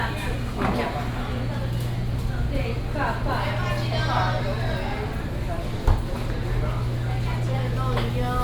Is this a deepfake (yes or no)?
no